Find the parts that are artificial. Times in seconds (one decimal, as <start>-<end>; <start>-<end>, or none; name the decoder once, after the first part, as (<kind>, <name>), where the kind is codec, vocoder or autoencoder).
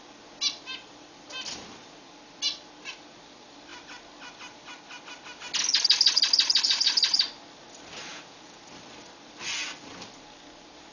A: 8.1-8.6 (vocoder, Vocos)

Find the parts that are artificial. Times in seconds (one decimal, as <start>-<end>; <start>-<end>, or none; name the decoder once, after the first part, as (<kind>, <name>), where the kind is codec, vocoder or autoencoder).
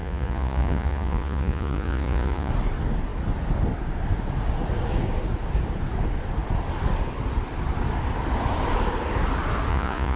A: 0.0-2.5 (vocoder, Vocos); 9.7-10.2